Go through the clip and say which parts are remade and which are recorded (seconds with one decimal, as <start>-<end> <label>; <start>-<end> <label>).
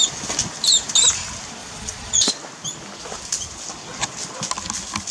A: 0.0-1.6 recorded; 1.6-2.3 remade; 2.3-5.1 recorded